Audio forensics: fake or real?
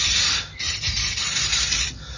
real